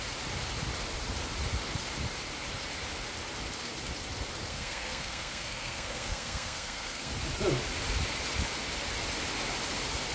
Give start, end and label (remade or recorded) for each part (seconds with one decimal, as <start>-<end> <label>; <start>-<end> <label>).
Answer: 0.0-4.5 recorded; 4.5-7.1 remade; 7.1-10.1 recorded